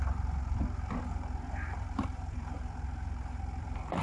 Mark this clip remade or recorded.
remade